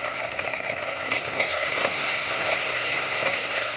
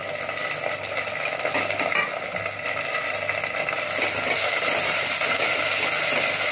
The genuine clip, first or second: second